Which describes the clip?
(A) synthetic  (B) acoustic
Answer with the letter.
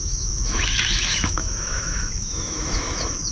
A